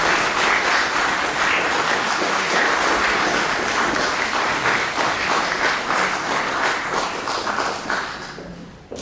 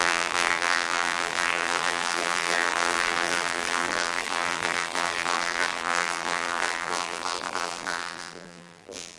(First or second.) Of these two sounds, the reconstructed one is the second